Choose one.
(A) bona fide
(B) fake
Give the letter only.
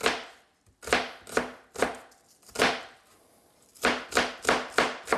A